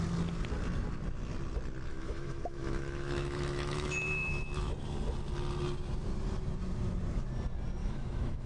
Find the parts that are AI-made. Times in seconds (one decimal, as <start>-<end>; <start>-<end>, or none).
1.9-4.7; 7.8-8.5